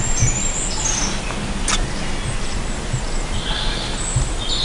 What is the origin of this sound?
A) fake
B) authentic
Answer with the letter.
B